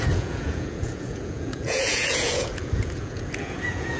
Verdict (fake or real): fake